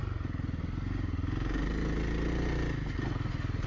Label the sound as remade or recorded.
recorded